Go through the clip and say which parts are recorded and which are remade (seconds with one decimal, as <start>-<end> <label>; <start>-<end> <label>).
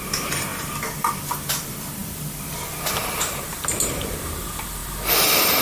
0.0-2.0 recorded; 2.0-3.4 remade; 3.4-5.6 recorded